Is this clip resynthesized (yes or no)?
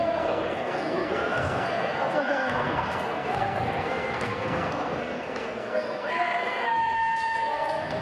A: yes